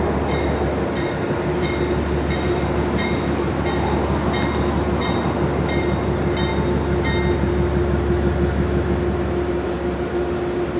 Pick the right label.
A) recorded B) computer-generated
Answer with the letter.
A